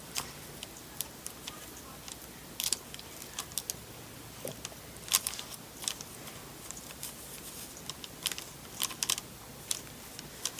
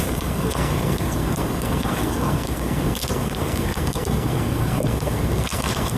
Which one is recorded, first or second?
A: first